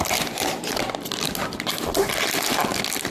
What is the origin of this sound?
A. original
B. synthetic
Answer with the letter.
A